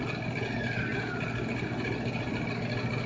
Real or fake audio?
real